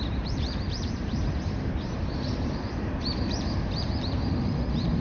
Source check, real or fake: fake